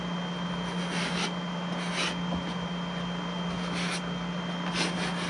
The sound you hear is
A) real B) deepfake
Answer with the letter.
A